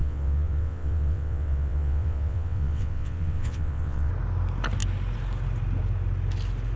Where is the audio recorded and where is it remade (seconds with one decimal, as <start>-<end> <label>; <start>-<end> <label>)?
0.0-4.1 remade; 4.1-6.8 recorded